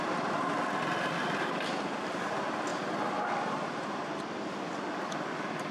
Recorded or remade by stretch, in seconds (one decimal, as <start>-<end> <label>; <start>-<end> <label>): 0.0-5.7 recorded